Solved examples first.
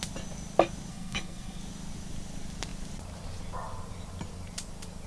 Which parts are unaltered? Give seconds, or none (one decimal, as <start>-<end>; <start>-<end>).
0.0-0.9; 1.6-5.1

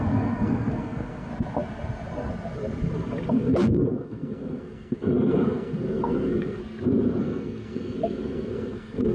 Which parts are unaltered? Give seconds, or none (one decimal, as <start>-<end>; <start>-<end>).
1.3-3.3; 6.6-7.2

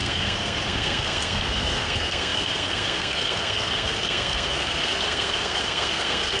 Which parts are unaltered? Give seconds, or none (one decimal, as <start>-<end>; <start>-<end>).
none